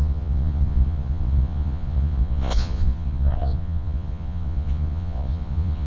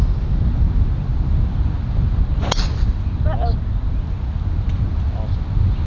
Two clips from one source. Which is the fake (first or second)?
first